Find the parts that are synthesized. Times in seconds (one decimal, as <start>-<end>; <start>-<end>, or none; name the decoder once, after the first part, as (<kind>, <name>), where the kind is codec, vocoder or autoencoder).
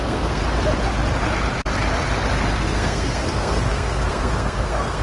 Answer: 0.0-0.4 (codec, SNAC); 2.5-5.0